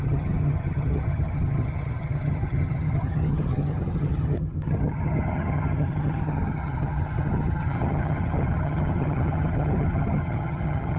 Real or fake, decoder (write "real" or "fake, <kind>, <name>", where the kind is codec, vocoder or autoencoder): fake, vocoder, HiFi-GAN